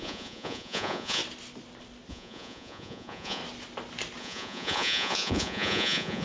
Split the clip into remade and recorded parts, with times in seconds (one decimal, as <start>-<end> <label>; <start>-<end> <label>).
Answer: 0.0-1.2 remade; 1.2-2.1 recorded; 2.1-3.4 remade; 3.4-4.2 recorded; 4.2-6.2 remade